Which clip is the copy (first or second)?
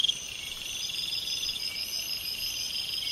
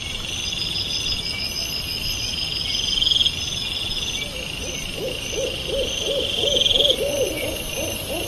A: first